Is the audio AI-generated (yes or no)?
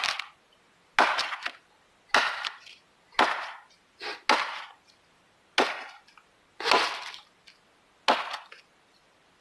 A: no